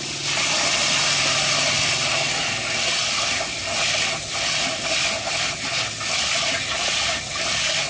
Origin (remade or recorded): recorded